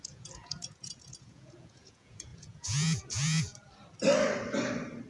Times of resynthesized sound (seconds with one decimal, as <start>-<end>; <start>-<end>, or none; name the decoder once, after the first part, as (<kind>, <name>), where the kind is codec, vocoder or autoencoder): 0.0-3.5 (vocoder, Vocos)